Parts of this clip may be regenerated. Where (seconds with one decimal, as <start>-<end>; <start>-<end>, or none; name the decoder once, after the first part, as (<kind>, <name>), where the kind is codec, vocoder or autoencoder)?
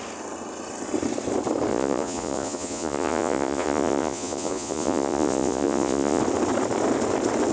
1.7-6.2 (vocoder, Vocos)